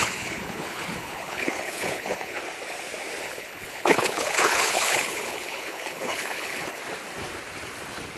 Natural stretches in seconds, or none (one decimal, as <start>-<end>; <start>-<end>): 2.4-3.2; 6.8-8.2